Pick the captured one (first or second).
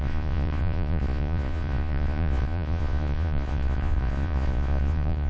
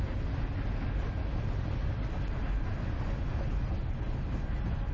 second